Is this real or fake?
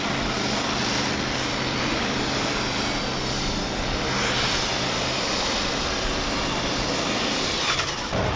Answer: fake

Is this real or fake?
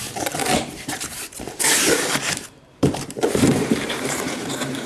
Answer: fake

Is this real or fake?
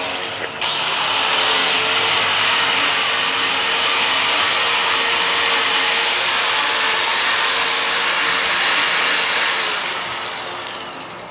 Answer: real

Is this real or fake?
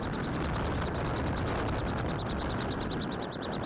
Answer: real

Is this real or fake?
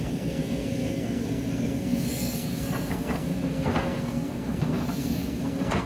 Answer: fake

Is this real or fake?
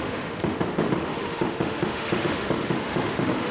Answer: fake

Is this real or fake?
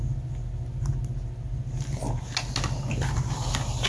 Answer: real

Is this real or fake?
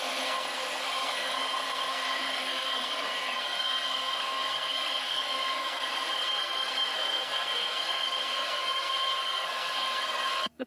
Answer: fake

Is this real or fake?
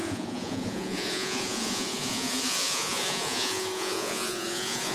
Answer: fake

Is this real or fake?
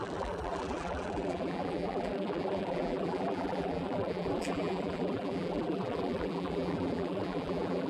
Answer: fake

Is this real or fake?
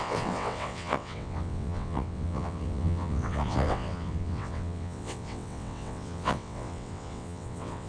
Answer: fake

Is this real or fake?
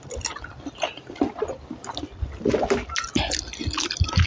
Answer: real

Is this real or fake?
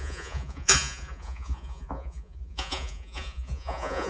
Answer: fake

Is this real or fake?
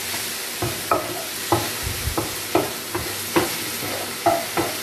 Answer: real